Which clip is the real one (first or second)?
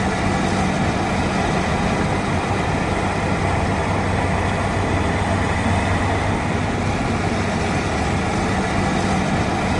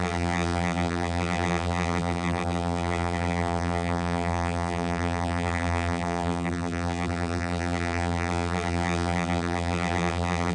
first